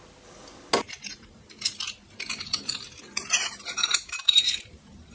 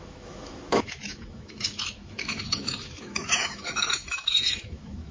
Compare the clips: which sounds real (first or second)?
first